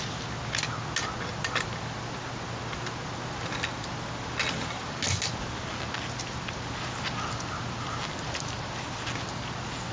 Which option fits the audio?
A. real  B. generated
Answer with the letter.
A